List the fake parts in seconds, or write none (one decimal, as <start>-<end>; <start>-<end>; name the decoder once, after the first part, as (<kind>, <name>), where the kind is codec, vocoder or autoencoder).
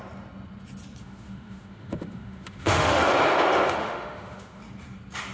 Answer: 1.0-3.1 (autoencoder, DAC-VAE); 3.8-4.6